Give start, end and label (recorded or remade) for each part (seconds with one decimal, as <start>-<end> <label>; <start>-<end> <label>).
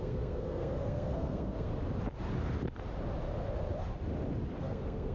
0.0-1.7 remade; 1.7-4.6 recorded; 4.6-5.1 remade